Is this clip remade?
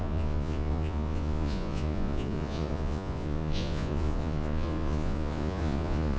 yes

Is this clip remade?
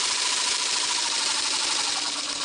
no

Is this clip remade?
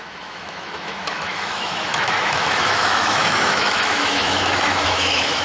yes